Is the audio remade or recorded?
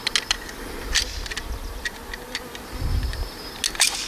recorded